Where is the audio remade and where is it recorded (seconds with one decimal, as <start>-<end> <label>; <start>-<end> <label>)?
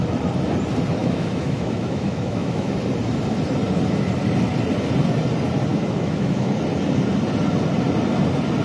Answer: 0.0-1.0 recorded; 1.0-2.7 remade; 2.7-5.7 recorded; 5.7-6.5 remade; 6.5-8.6 recorded